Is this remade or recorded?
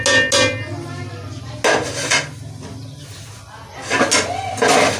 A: recorded